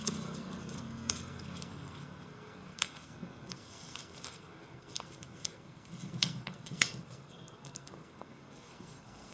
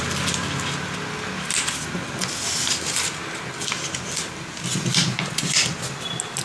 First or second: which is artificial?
first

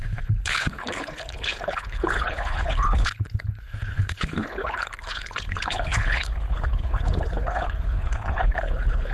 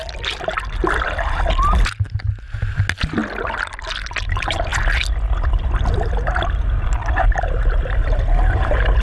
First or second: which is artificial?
first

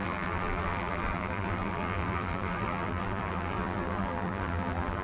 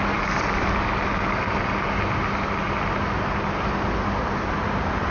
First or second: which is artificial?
first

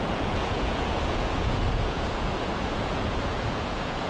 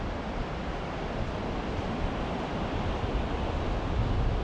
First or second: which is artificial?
first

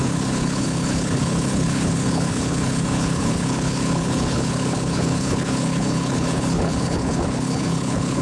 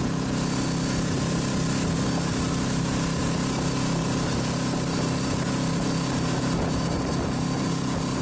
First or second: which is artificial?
first